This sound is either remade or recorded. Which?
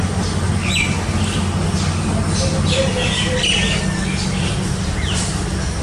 recorded